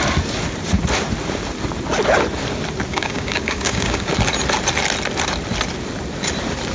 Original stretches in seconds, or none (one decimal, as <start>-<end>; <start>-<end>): 0.0-2.9; 4.1-6.7